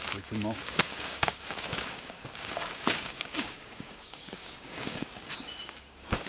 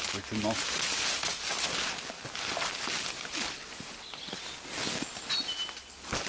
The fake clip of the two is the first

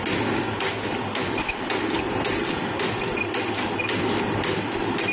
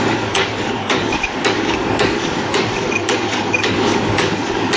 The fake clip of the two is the second